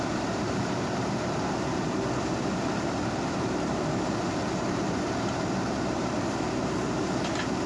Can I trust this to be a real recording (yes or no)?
no